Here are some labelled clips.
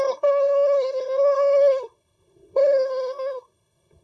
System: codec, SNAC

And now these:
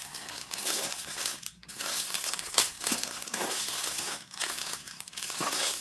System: codec, SNAC